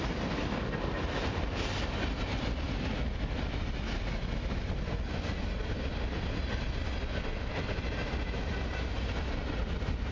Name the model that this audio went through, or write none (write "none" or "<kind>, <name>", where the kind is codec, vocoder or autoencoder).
none